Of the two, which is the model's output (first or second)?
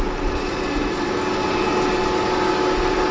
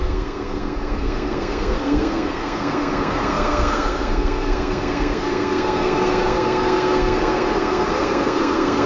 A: second